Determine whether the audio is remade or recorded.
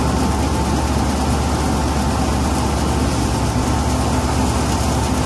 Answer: recorded